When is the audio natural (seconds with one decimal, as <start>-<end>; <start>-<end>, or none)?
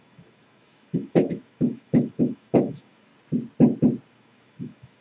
3.1-4.1